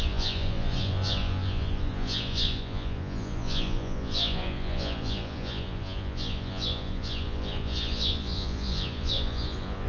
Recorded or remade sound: remade